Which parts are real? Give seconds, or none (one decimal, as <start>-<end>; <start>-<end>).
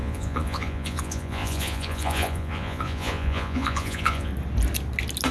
4.3-5.3